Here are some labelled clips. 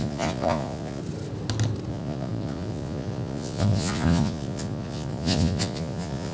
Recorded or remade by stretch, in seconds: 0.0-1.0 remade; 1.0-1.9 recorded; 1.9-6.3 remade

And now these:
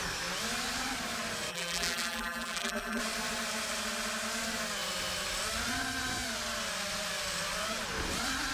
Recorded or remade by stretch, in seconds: 0.0-1.5 recorded; 1.5-3.0 remade; 3.0-8.5 recorded